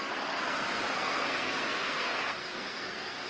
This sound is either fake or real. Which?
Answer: fake